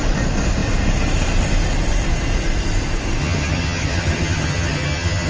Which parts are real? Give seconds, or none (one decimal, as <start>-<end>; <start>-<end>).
0.0-3.2